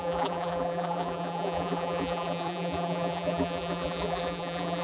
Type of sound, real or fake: fake